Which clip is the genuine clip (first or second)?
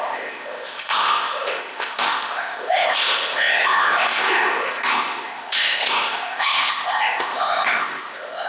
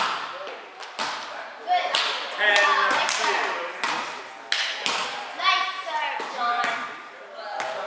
second